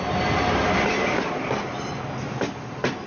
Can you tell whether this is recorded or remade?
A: recorded